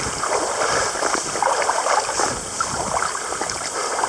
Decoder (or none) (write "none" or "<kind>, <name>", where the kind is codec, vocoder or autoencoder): none